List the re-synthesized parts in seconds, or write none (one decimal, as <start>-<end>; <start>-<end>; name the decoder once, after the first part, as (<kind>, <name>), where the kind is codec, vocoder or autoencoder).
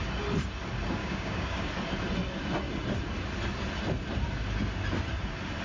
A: 1.0-1.7 (codec, DAC)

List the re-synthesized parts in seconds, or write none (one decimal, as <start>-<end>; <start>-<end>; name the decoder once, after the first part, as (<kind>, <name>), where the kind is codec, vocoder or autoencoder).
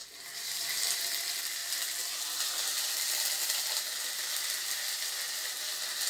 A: none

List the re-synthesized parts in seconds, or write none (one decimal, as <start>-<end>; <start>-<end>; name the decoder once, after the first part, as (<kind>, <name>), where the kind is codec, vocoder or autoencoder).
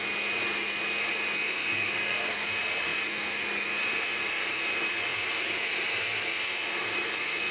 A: 1.6-2.3 (codec, DAC)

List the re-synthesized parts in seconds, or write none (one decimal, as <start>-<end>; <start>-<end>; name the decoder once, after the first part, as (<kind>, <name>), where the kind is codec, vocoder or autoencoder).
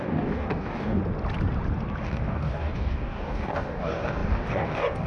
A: 0.0-1.0 (codec, DAC); 2.0-5.1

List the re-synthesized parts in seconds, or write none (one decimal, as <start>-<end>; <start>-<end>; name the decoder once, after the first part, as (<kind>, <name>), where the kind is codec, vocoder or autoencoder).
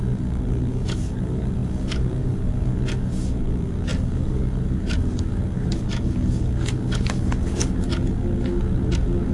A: 0.0-9.3 (codec, DAC)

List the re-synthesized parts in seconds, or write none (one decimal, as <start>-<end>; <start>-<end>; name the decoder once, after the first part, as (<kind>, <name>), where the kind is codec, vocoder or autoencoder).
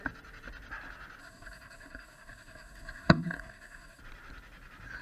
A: 1.2-4.0 (codec, DAC)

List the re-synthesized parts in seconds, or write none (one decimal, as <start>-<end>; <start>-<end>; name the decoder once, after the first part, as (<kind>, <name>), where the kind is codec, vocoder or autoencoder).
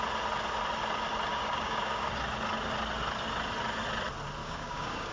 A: 1.3-2.1 (codec, DAC); 4.4-5.1